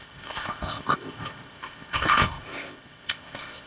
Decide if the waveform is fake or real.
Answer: fake